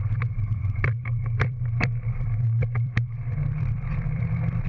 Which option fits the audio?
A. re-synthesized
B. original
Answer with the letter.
A